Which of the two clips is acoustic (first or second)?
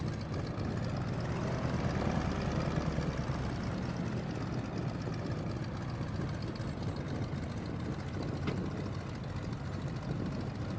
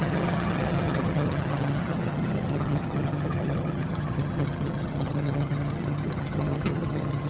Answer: first